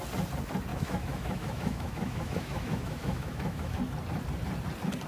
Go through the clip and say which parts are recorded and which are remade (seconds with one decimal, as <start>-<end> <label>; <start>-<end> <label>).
0.0-0.7 recorded; 0.7-3.8 remade; 3.8-5.1 recorded